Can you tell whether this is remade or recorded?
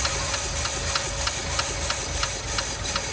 recorded